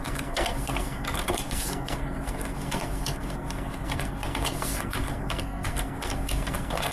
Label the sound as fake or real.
fake